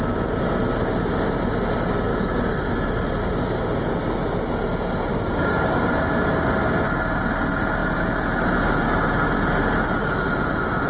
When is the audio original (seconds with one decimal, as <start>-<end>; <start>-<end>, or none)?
0.0-2.1; 2.7-5.1; 5.9-10.9